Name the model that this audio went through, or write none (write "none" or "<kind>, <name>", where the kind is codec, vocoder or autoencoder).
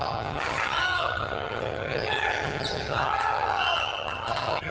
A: vocoder, HiFi-GAN